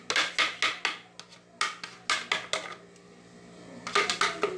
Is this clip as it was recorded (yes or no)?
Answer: yes